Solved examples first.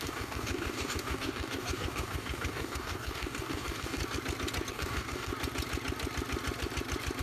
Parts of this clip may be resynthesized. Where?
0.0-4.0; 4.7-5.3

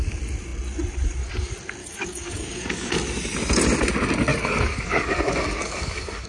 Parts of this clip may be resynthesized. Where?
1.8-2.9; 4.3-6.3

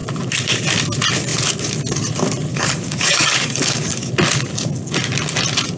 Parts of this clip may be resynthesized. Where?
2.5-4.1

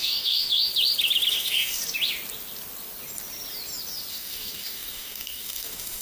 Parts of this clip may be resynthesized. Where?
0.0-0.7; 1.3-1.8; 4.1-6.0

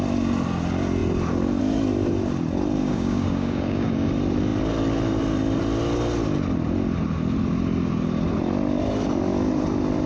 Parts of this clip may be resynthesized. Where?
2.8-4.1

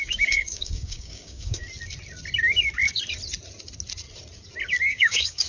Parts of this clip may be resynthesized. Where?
0.0-1.6; 4.9-5.5